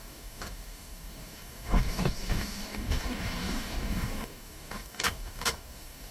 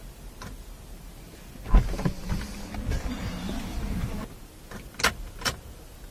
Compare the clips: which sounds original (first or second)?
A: second